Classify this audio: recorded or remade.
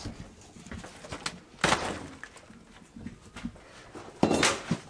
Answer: recorded